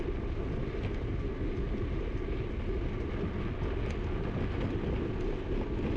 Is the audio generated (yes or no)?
no